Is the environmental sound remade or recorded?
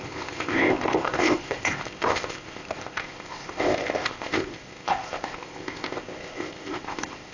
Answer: remade